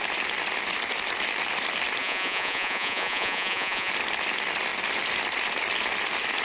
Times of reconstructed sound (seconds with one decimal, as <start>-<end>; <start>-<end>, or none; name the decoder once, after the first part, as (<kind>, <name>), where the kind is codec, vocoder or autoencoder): 2.0-3.9 (vocoder, Vocos)